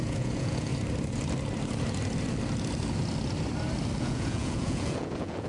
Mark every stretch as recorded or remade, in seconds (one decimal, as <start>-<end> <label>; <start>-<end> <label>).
0.0-0.7 remade; 0.7-4.0 recorded; 4.0-5.5 remade